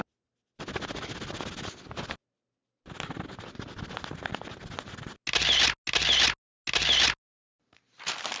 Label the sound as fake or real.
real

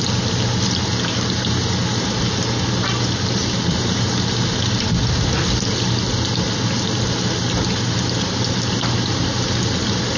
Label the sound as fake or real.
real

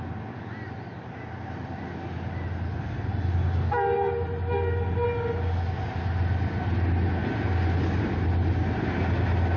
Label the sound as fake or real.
real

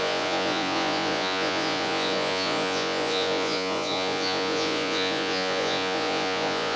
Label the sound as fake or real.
fake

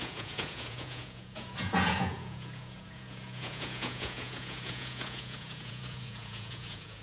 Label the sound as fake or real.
fake